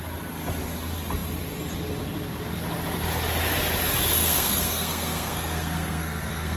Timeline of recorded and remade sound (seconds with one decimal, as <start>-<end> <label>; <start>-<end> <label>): 0.0-4.2 recorded; 4.2-6.6 remade